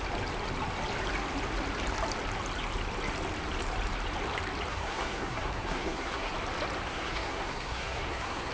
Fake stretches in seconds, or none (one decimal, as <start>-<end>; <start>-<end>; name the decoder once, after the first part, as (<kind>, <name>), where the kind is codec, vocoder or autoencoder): 4.7-6.3 (codec, SNAC); 6.9-8.5